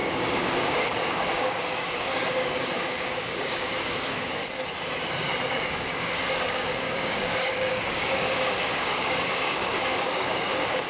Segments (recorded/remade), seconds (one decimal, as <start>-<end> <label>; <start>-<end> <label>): 0.0-4.4 remade; 4.4-5.5 recorded; 5.5-10.9 remade